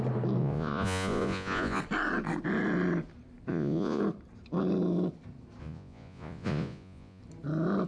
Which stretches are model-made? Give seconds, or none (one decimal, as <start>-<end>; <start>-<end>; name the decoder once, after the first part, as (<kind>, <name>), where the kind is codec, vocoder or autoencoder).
0.4-1.8 (vocoder, Vocos); 3.5-4.0; 5.6-7.2